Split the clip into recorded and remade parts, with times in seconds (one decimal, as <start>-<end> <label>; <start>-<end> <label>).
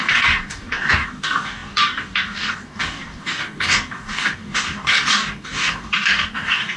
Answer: 0.0-6.8 remade